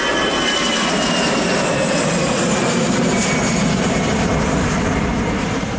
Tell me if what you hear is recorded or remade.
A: remade